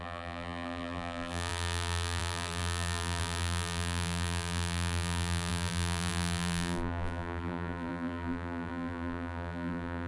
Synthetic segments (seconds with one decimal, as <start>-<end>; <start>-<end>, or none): 0.0-10.1